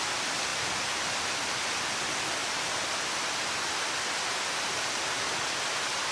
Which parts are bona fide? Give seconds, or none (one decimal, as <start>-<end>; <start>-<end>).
0.0-6.1